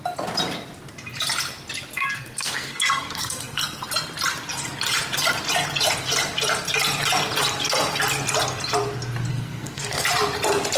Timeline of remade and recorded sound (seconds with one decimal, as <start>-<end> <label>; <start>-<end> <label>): 0.0-1.9 recorded; 1.9-3.8 remade; 3.8-9.3 recorded; 9.3-10.0 remade; 10.0-10.8 recorded